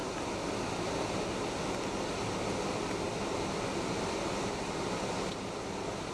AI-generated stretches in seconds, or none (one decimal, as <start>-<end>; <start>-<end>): none